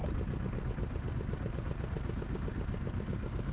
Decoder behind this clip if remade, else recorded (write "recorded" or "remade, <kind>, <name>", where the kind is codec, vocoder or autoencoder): recorded